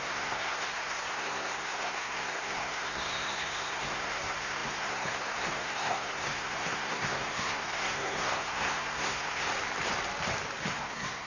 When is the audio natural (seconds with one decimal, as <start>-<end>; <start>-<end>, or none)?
9.5-10.7